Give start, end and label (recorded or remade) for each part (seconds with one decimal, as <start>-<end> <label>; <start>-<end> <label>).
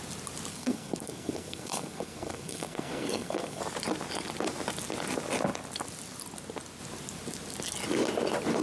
0.0-0.5 recorded; 0.5-3.6 remade; 3.6-8.6 recorded